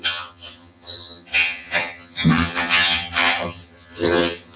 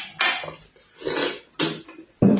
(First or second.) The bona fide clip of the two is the second